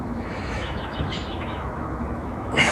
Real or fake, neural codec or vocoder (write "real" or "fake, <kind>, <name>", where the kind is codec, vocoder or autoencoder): fake, autoencoder, DAC-VAE